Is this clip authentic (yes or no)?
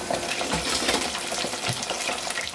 yes